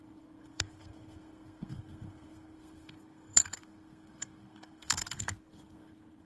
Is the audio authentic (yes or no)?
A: no